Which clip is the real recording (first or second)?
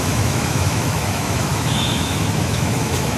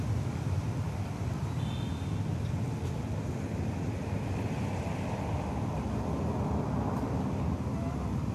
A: second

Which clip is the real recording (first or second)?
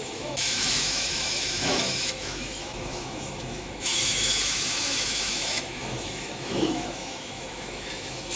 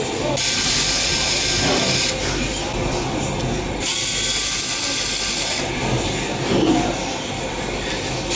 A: second